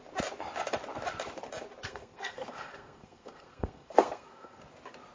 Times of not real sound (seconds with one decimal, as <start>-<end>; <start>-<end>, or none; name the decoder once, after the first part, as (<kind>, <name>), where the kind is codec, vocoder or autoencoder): 1.8-4.6 (codec, SNAC)